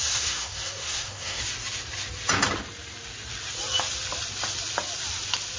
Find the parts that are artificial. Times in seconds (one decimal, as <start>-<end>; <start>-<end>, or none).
0.0-1.4

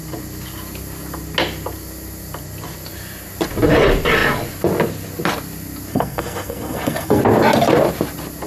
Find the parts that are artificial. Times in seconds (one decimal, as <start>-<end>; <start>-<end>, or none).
5.9-7.2